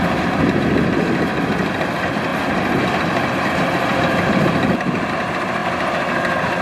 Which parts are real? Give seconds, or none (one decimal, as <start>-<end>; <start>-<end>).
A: 0.0-2.3; 5.1-6.6